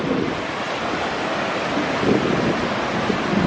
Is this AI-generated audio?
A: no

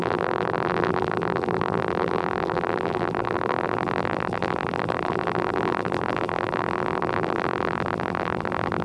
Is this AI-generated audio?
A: yes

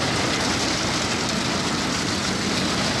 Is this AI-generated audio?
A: no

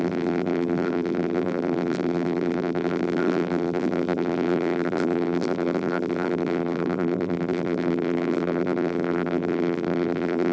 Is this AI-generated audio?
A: yes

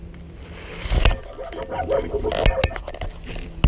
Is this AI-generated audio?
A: no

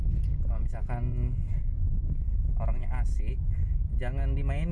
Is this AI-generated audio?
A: no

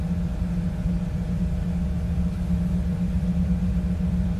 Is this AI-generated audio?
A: no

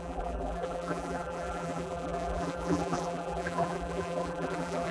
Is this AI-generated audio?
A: yes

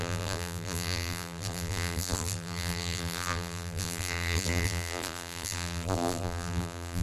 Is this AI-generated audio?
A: yes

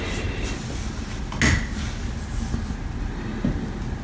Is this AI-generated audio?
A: no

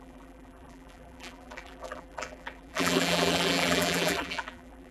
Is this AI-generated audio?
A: yes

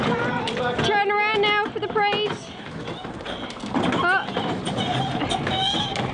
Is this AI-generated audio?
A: no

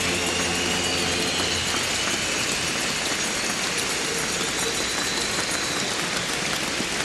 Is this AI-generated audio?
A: no